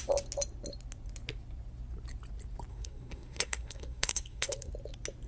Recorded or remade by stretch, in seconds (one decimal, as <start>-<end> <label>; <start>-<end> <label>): 0.0-2.7 recorded; 2.7-4.7 remade; 4.7-5.3 recorded